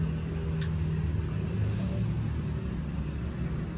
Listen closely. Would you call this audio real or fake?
real